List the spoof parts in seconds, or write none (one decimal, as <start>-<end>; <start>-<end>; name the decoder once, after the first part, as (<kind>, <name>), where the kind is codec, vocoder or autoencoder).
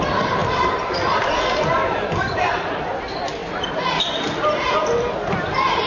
0.4-2.8 (vocoder, BigVGAN v2); 3.4-5.3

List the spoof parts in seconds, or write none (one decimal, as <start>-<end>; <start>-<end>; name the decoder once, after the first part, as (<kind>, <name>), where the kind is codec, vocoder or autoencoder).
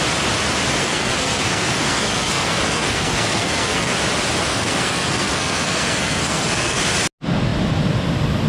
0.8-3.9 (codec, SNAC); 4.5-6.8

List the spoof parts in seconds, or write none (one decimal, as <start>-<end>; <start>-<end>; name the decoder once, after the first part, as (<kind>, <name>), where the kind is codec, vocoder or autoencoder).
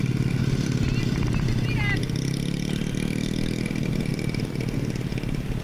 0.4-1.5 (vocoder, BigVGAN v2); 4.1-5.6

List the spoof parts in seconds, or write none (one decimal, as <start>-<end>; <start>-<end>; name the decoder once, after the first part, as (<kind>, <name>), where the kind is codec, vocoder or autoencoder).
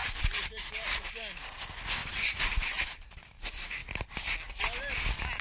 none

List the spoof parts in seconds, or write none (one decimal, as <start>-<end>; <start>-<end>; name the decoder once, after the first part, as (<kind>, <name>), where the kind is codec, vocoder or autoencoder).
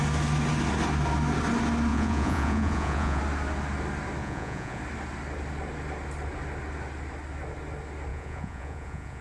1.9-3.2 (vocoder, Vocos); 4.2-4.8; 8.1-9.2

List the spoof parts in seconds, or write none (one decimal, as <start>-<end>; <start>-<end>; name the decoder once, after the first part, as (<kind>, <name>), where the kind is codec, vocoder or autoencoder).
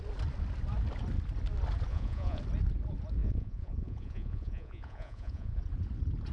1.9-2.4 (vocoder, Vocos); 3.2-5.6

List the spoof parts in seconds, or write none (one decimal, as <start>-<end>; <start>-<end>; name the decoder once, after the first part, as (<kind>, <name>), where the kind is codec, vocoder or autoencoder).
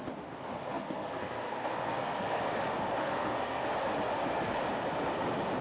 0.7-2.4 (codec, SNAC); 3.0-3.6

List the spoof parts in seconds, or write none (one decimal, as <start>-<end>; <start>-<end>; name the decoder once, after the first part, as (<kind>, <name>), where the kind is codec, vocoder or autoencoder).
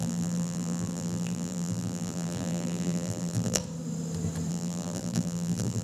0.0-3.6 (vocoder, BigVGAN v2); 4.5-5.8